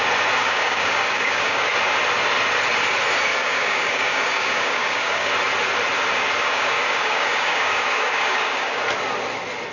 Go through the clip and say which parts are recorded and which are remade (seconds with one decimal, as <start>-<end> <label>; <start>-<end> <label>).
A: 0.0-0.4 recorded; 0.4-1.7 remade; 1.7-3.3 recorded; 3.3-5.3 remade; 5.3-6.4 recorded; 6.4-8.8 remade; 8.8-9.7 recorded